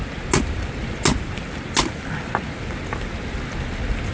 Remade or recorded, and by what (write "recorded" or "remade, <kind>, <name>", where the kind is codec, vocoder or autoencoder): recorded